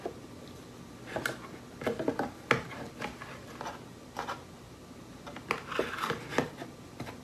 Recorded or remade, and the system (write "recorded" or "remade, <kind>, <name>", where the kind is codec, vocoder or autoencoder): recorded